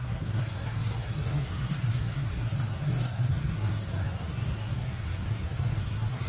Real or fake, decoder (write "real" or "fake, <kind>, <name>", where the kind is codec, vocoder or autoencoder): fake, codec, SNAC